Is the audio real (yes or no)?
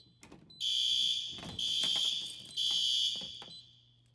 yes